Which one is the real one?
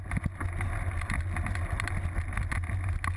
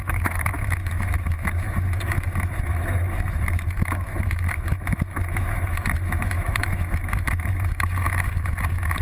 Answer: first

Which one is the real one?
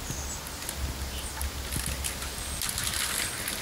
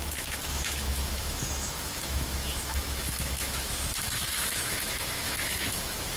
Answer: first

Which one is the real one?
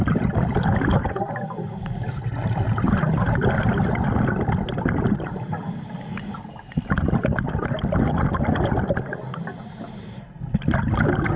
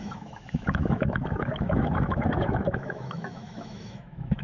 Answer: first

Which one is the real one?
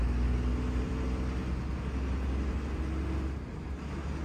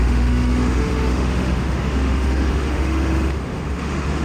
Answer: first